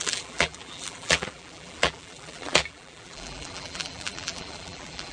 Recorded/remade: remade